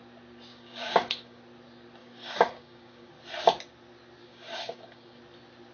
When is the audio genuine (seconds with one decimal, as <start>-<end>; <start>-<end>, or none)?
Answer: 0.0-0.5; 1.4-2.0; 3.1-4.2; 5.2-5.7

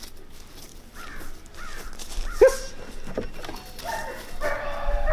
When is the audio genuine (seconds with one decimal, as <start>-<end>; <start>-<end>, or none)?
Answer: 0.0-5.1